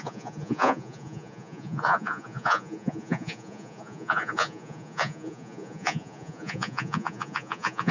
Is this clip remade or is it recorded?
remade